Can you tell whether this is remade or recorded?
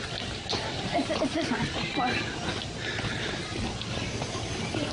recorded